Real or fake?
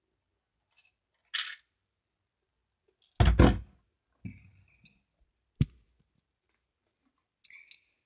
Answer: real